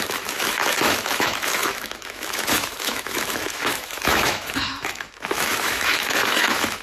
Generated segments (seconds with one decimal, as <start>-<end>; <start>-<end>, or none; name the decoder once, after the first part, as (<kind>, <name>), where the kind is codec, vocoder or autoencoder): 0.0-6.8 (autoencoder, DAC-VAE)